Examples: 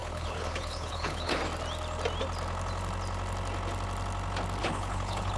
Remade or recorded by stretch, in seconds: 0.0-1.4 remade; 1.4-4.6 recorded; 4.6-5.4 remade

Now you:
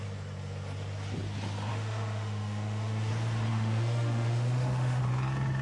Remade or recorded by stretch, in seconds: 0.0-1.7 recorded; 1.7-3.1 remade; 3.1-3.5 recorded; 3.5-5.0 remade; 5.0-5.6 recorded

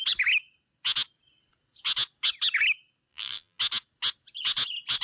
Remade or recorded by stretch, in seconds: 0.0-3.1 recorded; 3.1-3.6 remade; 3.6-5.0 recorded

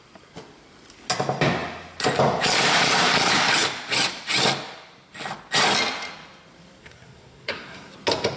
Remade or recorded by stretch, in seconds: 0.0-6.8 recorded; 6.8-7.9 remade; 7.9-8.4 recorded

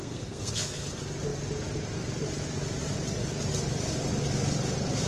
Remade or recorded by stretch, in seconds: 0.0-0.9 remade; 0.9-5.1 recorded